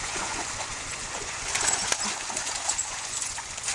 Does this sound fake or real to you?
fake